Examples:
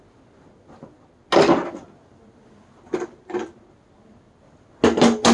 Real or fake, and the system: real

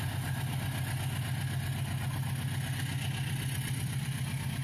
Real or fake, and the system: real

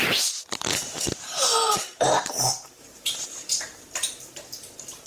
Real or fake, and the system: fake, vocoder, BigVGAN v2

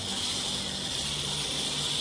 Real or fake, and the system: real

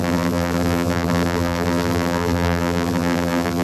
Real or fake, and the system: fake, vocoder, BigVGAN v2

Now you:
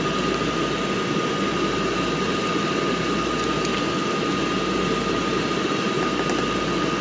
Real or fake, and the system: real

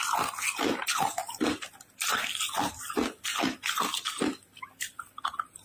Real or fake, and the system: real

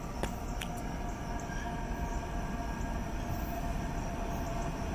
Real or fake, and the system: real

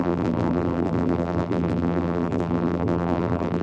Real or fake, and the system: fake, vocoder, BigVGAN v2